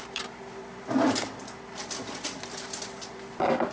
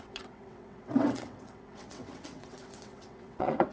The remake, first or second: second